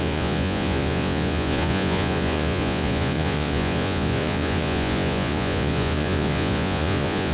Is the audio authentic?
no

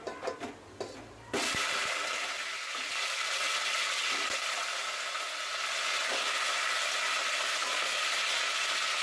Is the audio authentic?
yes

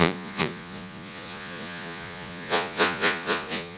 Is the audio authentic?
no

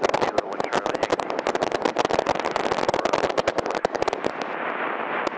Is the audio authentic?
yes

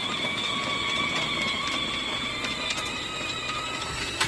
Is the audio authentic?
yes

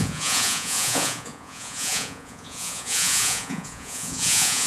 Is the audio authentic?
no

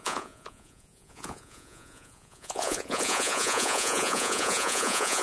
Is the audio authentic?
no